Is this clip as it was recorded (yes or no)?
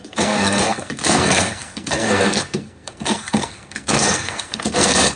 no